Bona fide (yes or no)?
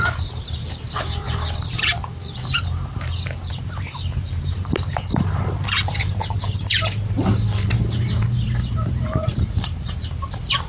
no